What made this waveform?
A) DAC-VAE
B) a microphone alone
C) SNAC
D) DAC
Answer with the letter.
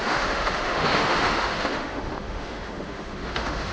A